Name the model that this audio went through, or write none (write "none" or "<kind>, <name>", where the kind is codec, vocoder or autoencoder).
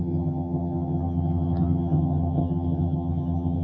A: vocoder, HiFi-GAN